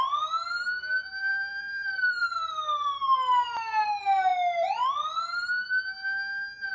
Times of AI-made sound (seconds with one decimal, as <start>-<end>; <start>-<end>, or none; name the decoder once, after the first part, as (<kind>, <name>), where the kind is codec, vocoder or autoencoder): 1.3-2.5 (vocoder, BigVGAN v2)

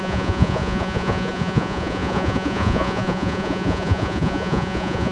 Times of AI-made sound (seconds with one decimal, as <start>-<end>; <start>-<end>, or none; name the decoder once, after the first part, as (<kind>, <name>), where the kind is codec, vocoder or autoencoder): 0.0-5.1 (vocoder, Vocos)

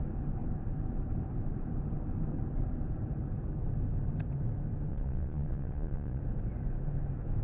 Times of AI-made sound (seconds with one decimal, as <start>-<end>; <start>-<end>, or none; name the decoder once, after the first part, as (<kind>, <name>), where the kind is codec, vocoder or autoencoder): 4.9-6.2 (vocoder, Vocos)

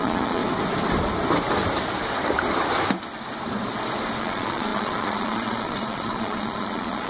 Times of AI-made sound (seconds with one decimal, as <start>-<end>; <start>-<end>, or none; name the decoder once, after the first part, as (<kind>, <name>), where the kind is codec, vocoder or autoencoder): 0.0-0.4 (vocoder, Vocos); 4.2-7.1

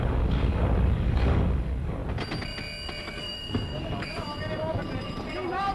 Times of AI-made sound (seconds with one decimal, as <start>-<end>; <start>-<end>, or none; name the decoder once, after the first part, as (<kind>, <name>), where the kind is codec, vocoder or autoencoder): 0.0-2.0 (codec, DAC); 3.0-4.3

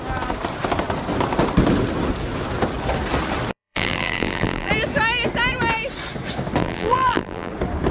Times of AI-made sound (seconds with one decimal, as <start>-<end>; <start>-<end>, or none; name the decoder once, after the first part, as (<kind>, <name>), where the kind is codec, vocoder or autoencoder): 3.5-4.7 (vocoder, BigVGAN v2); 6.6-7.5